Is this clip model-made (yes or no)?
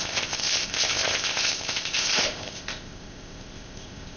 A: yes